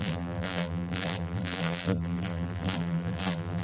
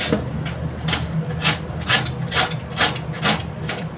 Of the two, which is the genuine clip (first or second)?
second